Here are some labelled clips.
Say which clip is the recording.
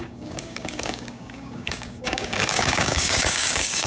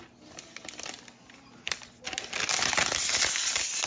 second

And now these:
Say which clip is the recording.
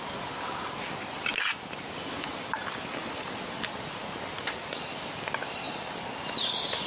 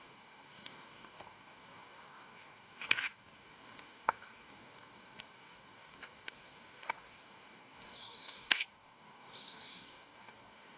first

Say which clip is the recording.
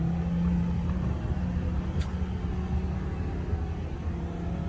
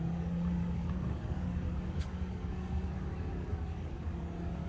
first